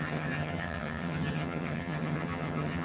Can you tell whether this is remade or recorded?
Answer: remade